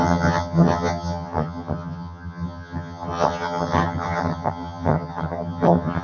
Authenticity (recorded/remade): remade